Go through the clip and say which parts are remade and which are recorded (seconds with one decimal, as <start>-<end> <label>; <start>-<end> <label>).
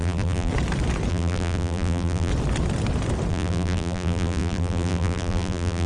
0.0-0.5 remade; 0.5-1.1 recorded; 1.1-2.3 remade; 2.3-3.3 recorded; 3.3-5.9 remade